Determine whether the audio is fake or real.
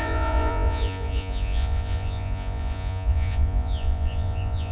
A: fake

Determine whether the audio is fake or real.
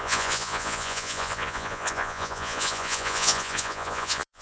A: fake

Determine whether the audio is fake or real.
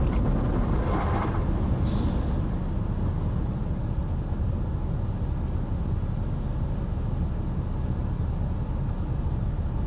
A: real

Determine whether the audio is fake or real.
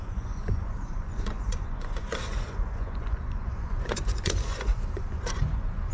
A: fake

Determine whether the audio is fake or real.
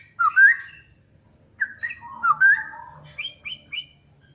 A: real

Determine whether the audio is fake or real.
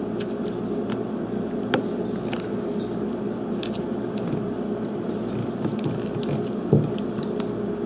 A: real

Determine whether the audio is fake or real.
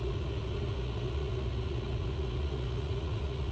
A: fake